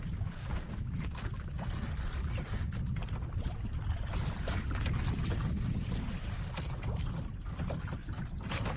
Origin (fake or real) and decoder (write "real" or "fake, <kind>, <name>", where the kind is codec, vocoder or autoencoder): fake, vocoder, BigVGAN v2